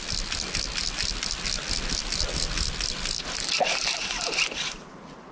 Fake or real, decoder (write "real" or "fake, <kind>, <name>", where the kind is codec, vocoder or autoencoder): real